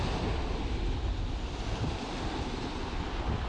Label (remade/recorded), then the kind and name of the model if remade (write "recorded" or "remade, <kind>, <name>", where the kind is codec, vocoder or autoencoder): recorded